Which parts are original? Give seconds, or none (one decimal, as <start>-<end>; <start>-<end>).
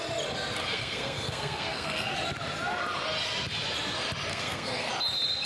0.0-0.6; 2.1-4.3; 4.9-5.5